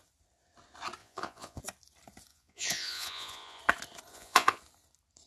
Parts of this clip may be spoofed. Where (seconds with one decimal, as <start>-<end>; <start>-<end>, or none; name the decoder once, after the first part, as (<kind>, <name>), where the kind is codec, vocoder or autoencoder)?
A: 1.0-1.6 (vocoder, Vocos); 2.3-3.6; 4.1-4.6